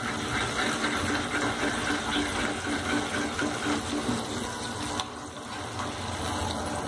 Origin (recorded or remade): recorded